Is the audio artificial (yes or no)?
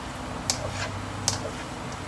no